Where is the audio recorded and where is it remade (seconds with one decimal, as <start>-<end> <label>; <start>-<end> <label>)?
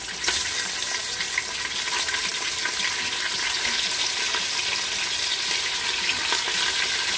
0.0-7.2 recorded